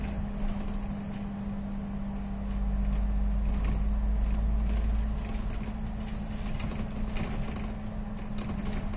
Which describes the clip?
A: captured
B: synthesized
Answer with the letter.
A